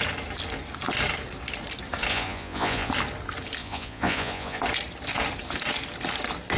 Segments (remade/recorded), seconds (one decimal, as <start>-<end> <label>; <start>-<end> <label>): 0.0-2.1 recorded; 2.1-2.9 remade; 2.9-3.6 recorded; 3.6-4.6 remade; 4.6-6.6 recorded